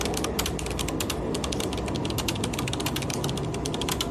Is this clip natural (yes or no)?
yes